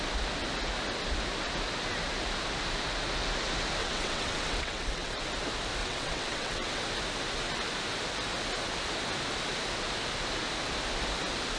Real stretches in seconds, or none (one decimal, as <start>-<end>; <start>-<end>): 0.0-3.8; 5.2-5.8; 6.8-11.6